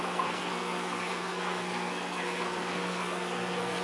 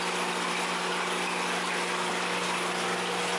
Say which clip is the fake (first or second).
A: first